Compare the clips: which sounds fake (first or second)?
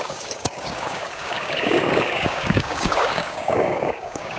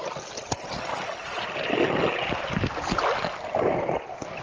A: first